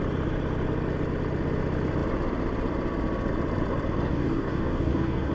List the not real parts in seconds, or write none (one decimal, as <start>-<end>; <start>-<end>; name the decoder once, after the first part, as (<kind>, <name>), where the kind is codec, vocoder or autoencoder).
4.1-5.3 (codec, DAC)